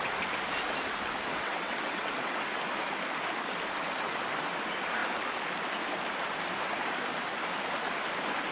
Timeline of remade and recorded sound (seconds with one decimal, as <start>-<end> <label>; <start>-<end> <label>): 0.0-1.3 recorded; 1.3-2.1 remade; 2.1-8.5 recorded